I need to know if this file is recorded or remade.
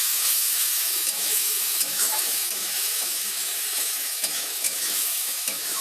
remade